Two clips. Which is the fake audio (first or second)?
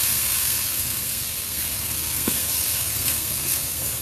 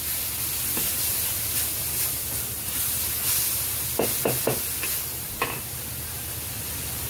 first